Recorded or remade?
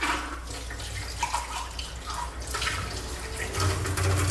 recorded